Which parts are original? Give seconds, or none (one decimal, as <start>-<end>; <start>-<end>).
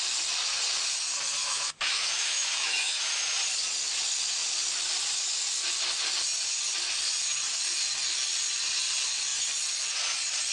0.0-1.4; 3.1-10.5